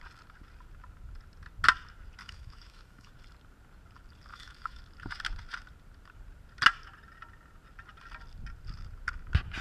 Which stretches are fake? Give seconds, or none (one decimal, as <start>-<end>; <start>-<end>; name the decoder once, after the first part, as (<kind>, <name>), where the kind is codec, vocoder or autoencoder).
2.2-3.1 (autoencoder, DAC-VAE); 4.3-4.8